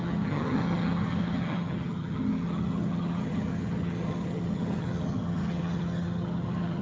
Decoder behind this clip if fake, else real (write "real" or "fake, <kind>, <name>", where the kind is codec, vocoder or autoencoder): fake, vocoder, HiFi-GAN